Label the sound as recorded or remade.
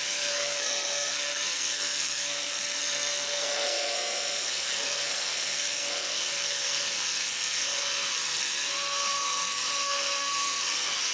remade